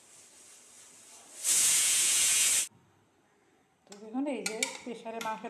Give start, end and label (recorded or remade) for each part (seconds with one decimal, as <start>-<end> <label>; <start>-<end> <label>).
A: 0.0-1.5 recorded; 1.5-2.5 remade; 2.5-5.5 recorded